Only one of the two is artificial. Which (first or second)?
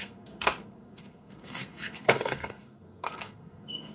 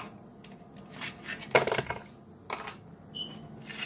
first